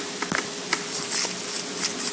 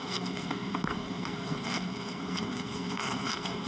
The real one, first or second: first